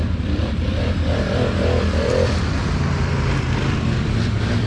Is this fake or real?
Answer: fake